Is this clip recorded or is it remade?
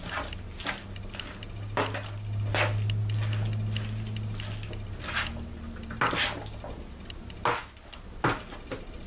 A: recorded